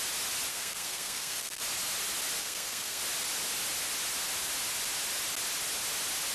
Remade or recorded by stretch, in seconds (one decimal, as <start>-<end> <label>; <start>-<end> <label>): 0.0-0.5 recorded; 0.5-1.6 remade; 1.6-2.4 recorded; 2.4-3.0 remade; 3.0-6.3 recorded